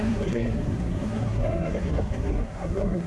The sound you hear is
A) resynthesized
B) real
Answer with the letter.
A